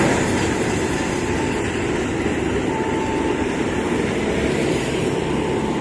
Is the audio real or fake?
fake